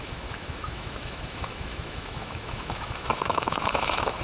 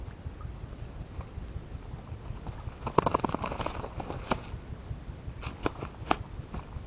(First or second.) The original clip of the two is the second